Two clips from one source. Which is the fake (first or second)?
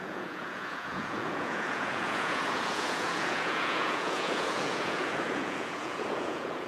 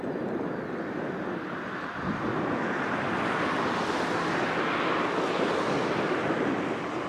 first